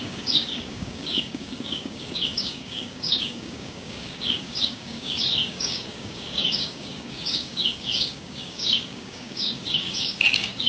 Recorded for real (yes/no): no